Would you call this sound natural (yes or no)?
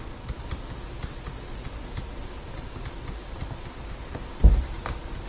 yes